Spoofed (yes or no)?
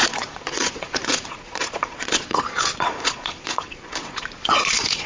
yes